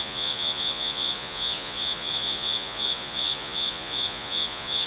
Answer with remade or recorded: remade